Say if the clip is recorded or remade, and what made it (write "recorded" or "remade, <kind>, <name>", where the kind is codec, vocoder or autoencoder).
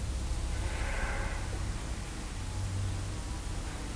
recorded